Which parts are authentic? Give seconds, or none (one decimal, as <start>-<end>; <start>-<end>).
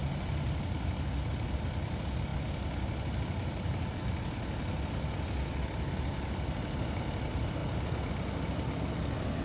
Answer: 0.0-9.4